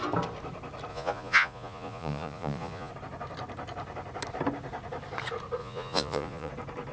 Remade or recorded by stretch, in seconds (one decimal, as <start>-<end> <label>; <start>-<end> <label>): 0.0-0.9 recorded; 0.9-2.9 remade; 2.9-5.6 recorded; 5.6-6.5 remade; 6.5-6.9 recorded